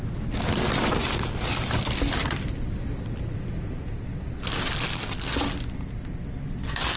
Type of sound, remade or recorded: recorded